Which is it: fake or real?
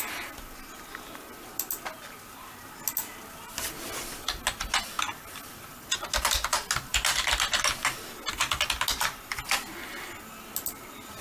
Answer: real